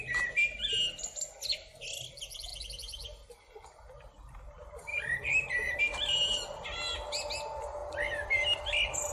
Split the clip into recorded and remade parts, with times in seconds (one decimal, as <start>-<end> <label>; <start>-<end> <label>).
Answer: 0.0-2.5 recorded; 2.5-4.5 remade; 4.5-4.9 recorded; 4.9-5.8 remade; 5.8-9.1 recorded